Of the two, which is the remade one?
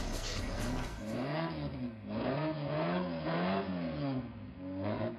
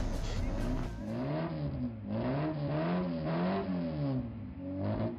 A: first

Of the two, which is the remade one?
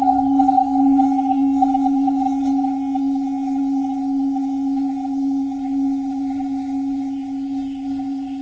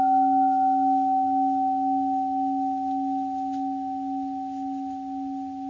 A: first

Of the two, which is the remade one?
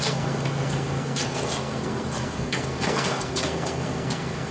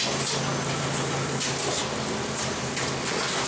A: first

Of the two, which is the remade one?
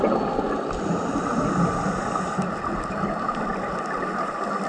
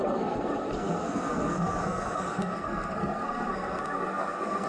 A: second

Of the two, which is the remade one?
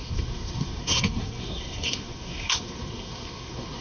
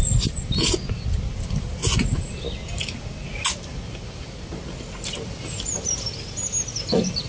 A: first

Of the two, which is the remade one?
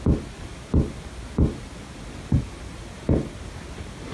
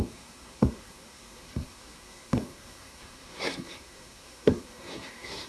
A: second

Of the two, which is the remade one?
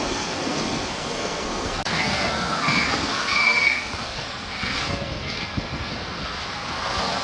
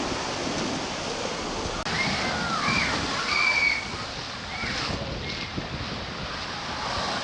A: first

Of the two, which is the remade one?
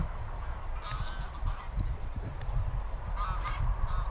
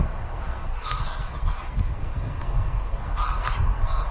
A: second